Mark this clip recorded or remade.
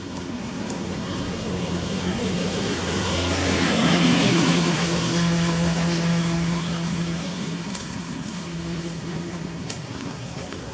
remade